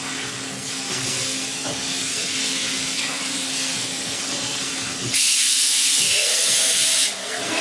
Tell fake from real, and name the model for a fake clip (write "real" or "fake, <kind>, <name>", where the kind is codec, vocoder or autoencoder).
fake, codec, SNAC